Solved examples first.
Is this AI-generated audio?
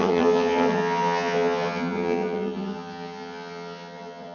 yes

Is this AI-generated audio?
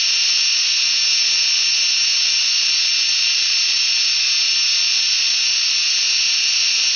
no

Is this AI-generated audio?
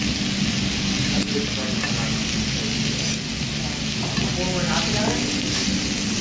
no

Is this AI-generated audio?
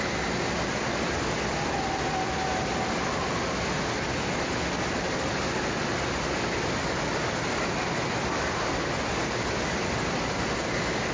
no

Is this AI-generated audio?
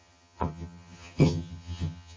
yes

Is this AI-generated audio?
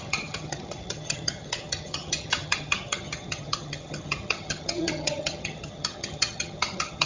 yes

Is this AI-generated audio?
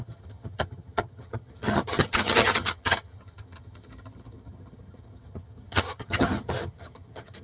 yes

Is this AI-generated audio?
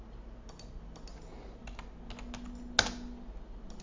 no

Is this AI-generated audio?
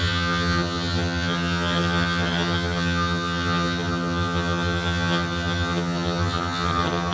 yes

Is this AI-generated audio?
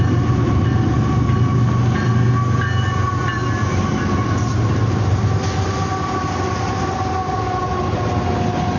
no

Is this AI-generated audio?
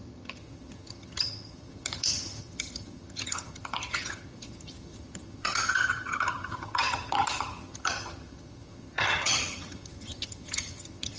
yes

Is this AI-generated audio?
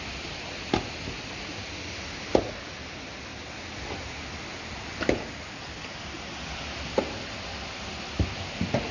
no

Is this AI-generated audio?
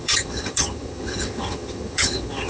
yes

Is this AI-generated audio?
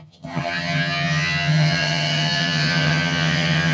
yes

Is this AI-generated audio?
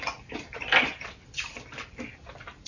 no